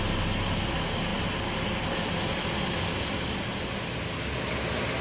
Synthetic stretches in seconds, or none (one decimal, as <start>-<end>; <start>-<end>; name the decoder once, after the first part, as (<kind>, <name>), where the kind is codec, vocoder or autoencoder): none